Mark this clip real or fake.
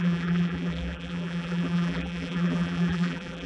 fake